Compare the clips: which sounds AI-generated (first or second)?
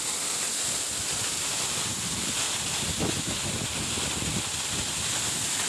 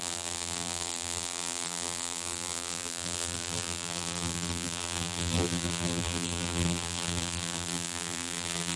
second